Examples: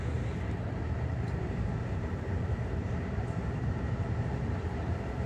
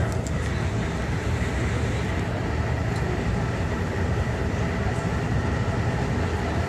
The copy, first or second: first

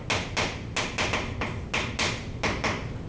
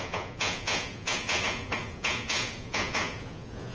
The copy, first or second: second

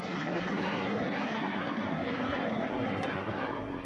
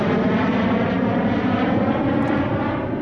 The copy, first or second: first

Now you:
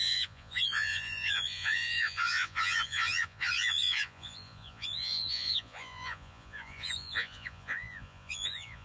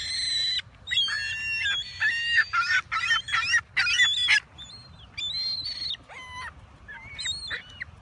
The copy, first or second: first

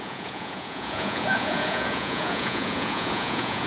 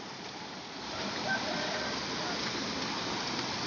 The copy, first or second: first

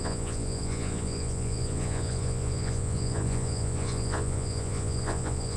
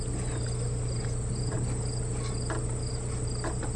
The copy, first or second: first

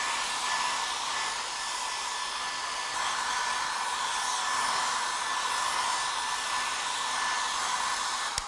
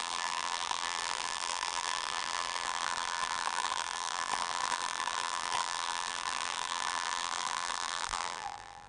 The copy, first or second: second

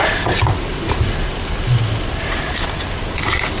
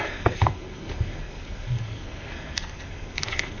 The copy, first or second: second